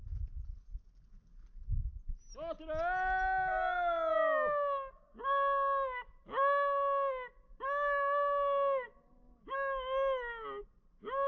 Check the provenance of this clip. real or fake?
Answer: real